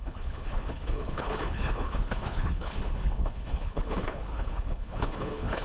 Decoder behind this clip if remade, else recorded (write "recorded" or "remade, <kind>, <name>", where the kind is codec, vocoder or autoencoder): remade, codec, HILCodec